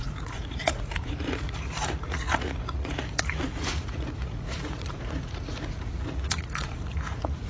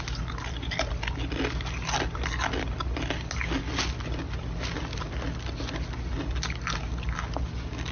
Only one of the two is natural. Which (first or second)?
second